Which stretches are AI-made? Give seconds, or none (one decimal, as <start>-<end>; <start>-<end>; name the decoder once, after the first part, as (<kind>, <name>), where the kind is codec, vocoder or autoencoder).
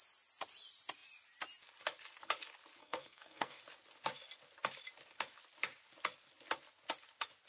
2.8-3.6 (codec, SNAC)